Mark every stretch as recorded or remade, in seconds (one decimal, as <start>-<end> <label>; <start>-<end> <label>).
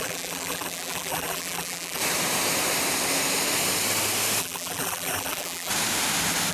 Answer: 0.0-2.0 remade; 2.0-4.4 recorded; 4.4-5.7 remade; 5.7-6.5 recorded